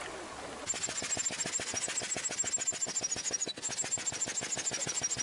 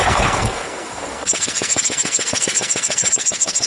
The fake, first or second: second